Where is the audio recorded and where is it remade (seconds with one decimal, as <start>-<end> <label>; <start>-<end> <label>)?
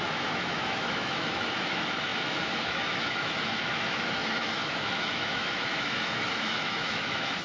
0.0-7.4 remade